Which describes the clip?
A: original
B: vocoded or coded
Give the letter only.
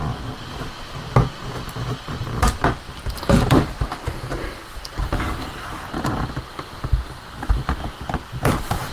B